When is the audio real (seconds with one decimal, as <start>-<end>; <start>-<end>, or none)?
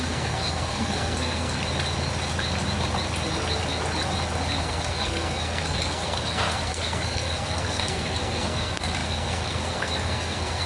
1.6-4.6